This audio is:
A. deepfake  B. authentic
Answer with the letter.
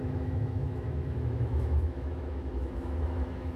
A